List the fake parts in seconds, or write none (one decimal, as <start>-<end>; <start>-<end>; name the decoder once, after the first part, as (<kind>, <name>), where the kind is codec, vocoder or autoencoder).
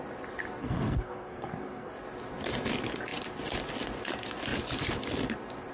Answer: 0.6-1.9 (codec, SNAC)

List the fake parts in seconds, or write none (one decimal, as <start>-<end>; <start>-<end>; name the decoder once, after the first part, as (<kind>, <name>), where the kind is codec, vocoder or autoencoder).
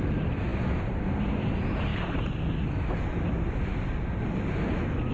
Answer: none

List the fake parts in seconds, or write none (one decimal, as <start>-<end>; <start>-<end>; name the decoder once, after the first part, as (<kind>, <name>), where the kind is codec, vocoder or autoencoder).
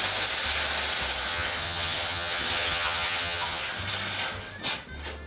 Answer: 1.3-3.6 (vocoder, HiFi-GAN)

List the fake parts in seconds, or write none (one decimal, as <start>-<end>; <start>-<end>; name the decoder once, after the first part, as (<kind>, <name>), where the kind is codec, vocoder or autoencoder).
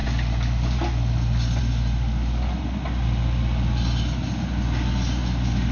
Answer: none